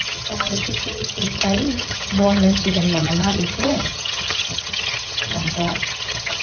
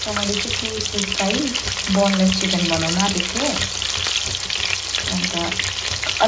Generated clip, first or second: first